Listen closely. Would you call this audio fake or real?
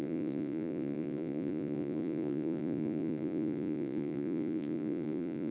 fake